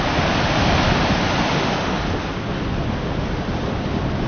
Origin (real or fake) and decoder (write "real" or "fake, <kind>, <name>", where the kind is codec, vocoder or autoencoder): real